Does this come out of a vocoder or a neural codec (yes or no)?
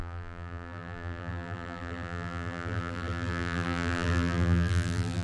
yes